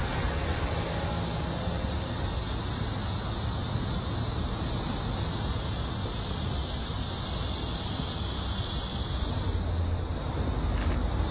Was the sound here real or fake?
real